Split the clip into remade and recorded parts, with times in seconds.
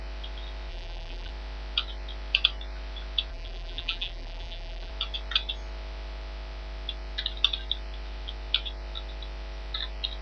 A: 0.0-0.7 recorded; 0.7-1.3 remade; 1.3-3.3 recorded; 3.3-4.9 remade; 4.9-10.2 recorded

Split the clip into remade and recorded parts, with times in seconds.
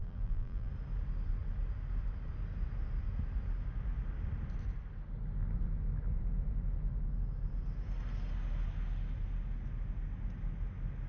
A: 0.0-0.7 remade; 0.7-11.1 recorded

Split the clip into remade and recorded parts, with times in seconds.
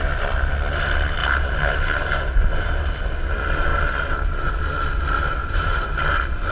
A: 0.0-1.2 recorded; 1.2-2.7 remade; 2.7-3.7 recorded; 3.7-4.5 remade; 4.5-5.4 recorded; 5.4-6.5 remade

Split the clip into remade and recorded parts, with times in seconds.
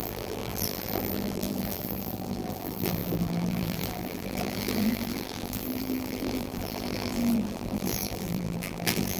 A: 0.0-9.2 remade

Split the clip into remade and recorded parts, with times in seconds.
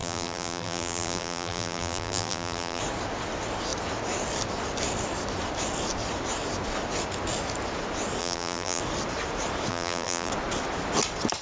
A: 0.0-2.8 remade; 2.8-8.2 recorded; 8.2-8.8 remade; 8.8-9.7 recorded; 9.7-10.3 remade; 10.3-11.4 recorded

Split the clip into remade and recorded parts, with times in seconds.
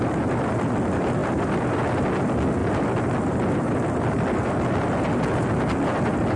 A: 0.0-6.4 recorded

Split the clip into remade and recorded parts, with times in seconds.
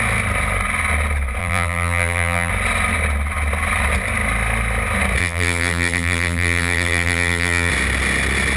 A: 0.0-1.4 recorded; 1.4-2.5 remade; 2.5-5.2 recorded; 5.2-7.7 remade; 7.7-8.6 recorded